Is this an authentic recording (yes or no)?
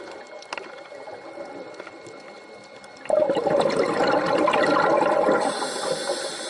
yes